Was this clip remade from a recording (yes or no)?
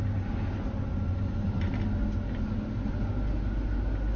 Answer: no